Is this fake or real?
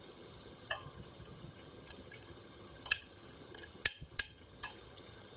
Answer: fake